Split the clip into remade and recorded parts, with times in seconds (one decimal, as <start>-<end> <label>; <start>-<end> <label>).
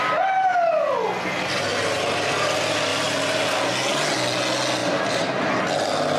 0.0-4.8 recorded; 4.8-5.5 remade; 5.5-6.2 recorded